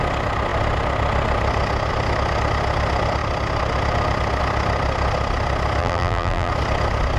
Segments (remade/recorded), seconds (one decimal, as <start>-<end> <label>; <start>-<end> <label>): 0.0-5.8 recorded; 5.8-6.5 remade; 6.5-7.2 recorded